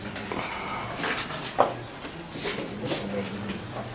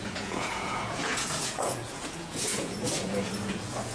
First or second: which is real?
first